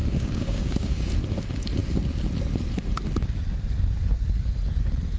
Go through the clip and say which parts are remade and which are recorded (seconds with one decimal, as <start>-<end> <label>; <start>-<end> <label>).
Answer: 0.0-1.1 remade; 1.1-5.2 recorded